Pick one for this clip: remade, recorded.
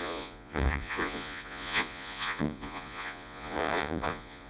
remade